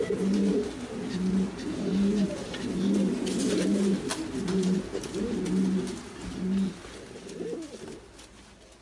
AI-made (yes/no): no